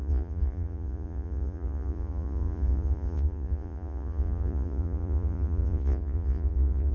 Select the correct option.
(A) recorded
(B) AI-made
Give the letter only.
B